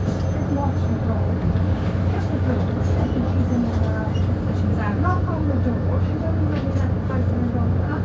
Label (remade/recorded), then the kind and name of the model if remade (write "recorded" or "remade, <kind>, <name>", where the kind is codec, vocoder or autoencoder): recorded